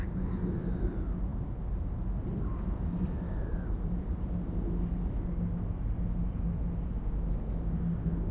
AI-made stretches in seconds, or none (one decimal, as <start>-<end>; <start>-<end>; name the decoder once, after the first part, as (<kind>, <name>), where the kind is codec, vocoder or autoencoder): 1.3-4.3 (vocoder, BigVGAN v2)